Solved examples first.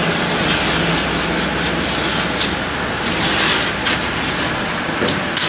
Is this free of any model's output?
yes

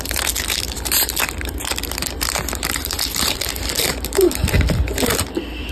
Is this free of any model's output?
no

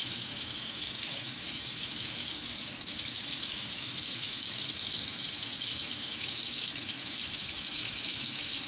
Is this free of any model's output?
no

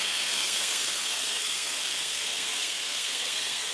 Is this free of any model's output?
no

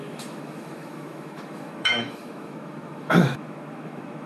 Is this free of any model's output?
no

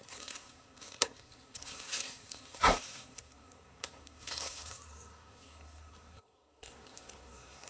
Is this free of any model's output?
no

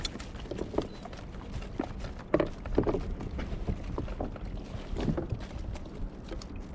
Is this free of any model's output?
yes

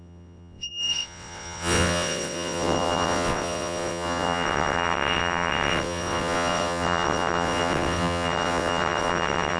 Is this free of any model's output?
no